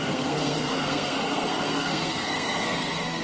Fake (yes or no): yes